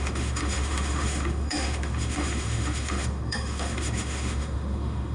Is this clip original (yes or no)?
no